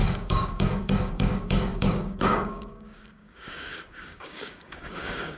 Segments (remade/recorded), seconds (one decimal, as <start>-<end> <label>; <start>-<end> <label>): 0.0-5.4 remade

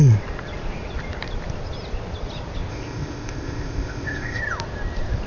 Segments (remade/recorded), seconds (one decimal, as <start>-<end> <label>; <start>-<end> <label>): 0.0-2.7 recorded; 2.7-4.4 remade; 4.4-5.3 recorded

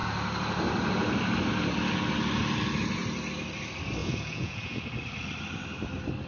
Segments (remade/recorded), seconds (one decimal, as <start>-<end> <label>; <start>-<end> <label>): 0.0-4.0 recorded; 4.0-4.8 remade; 4.8-6.3 recorded

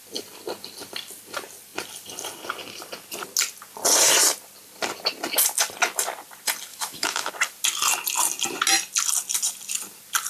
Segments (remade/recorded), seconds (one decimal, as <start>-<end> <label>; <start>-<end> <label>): 0.0-6.7 recorded; 6.7-7.3 remade; 7.3-10.3 recorded

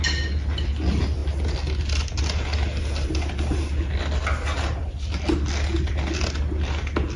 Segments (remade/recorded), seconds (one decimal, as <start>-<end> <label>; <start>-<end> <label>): 0.0-7.2 recorded

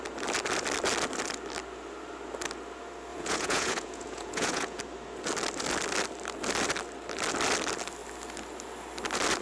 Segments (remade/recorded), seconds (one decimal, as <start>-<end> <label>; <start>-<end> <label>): 0.0-3.1 recorded; 3.1-4.8 remade; 4.8-9.4 recorded

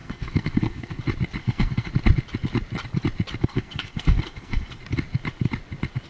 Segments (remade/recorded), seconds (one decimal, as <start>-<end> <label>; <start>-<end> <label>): 0.0-1.0 remade; 1.0-1.4 recorded; 1.4-1.9 remade; 1.9-3.4 recorded; 3.4-4.8 remade; 4.8-6.1 recorded